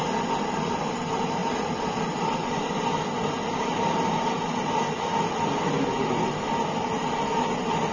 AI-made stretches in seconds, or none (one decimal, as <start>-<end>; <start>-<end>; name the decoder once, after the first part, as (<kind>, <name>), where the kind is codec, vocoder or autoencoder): 1.4-2.8 (vocoder, BigVGAN v2)